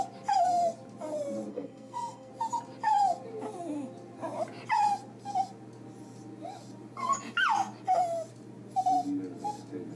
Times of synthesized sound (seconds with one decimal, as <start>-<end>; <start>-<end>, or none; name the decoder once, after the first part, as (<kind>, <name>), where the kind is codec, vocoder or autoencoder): 1.5-2.3 (codec, SNAC)